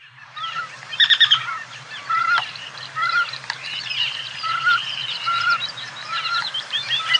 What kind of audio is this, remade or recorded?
remade